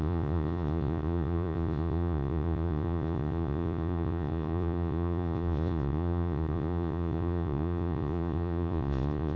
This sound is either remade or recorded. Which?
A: remade